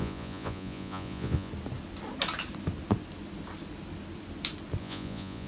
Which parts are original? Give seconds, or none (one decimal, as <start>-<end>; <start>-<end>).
1.5-4.8